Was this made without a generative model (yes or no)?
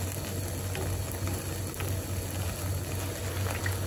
yes